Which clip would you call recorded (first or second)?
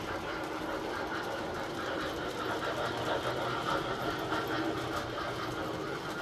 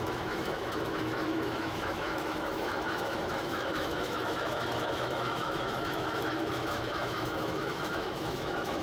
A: first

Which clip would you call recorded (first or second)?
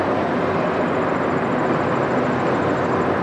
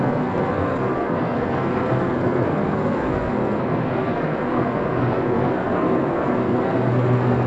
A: first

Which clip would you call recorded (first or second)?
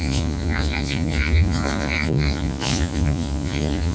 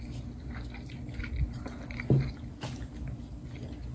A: second